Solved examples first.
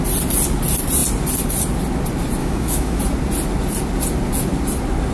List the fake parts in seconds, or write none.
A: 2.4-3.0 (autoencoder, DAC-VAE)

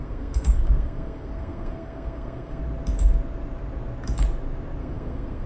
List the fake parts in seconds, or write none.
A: 0.0-2.6 (codec, SNAC); 4.8-5.5

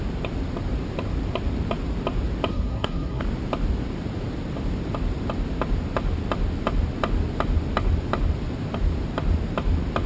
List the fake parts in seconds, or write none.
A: 2.5-3.2 (codec, SNAC)

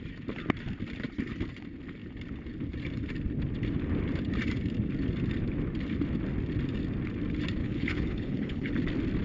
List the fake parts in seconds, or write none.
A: 7.6-8.7 (codec, HILCodec)

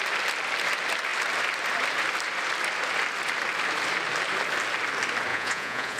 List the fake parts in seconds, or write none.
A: 5.3-6.0 (vocoder, Vocos)

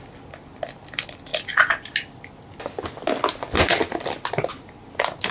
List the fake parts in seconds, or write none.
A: none

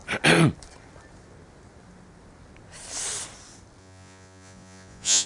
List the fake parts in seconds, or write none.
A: 3.8-5.3 (vocoder, Vocos)